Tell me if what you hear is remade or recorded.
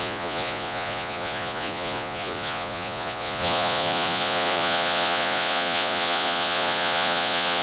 remade